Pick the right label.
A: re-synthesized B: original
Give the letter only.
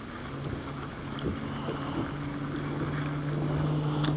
B